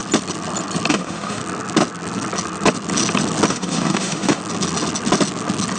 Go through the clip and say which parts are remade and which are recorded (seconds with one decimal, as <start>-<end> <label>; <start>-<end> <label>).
0.0-0.9 recorded; 0.9-1.4 remade; 1.4-3.5 recorded; 3.5-4.4 remade; 4.4-5.8 recorded